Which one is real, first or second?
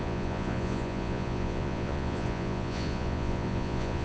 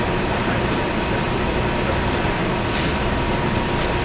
second